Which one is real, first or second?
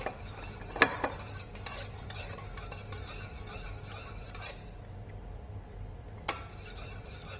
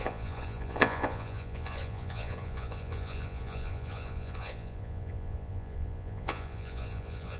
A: first